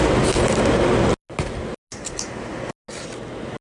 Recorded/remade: recorded